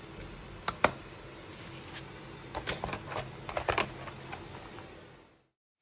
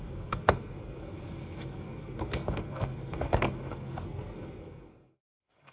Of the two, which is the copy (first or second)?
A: second